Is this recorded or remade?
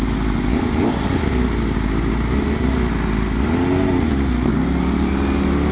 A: recorded